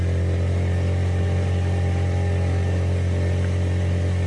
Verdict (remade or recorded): recorded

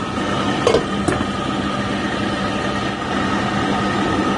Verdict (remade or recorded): recorded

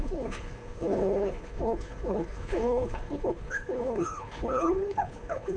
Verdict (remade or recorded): remade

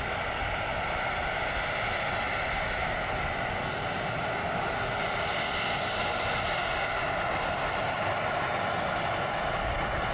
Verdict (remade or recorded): recorded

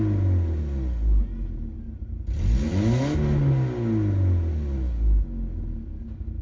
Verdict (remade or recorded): recorded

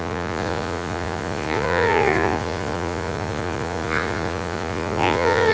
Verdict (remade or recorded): remade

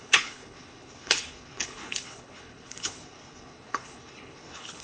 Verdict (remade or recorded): remade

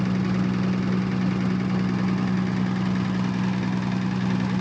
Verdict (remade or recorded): recorded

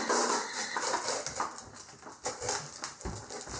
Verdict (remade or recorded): recorded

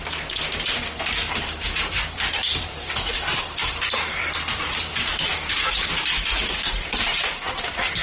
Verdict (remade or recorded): remade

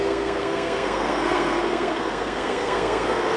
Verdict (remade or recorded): remade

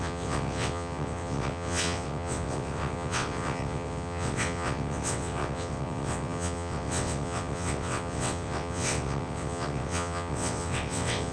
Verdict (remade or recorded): remade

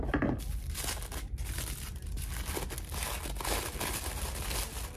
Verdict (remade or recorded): recorded